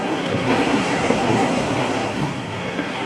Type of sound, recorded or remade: remade